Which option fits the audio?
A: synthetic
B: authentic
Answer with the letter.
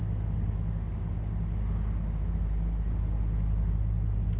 B